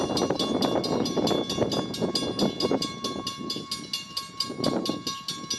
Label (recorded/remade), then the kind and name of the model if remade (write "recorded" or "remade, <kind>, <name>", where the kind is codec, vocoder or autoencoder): recorded